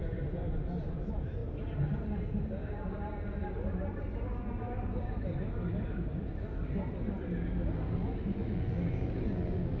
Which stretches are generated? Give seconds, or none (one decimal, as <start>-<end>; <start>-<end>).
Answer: none